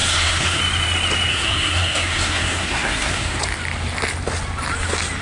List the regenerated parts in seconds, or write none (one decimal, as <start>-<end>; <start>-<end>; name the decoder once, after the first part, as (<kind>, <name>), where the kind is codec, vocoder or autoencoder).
0.0-0.6 (codec, SNAC); 1.3-3.4